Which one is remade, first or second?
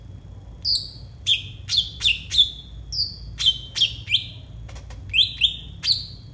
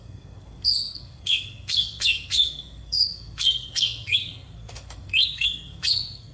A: second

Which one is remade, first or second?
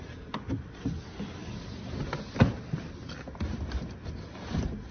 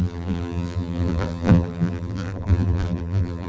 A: second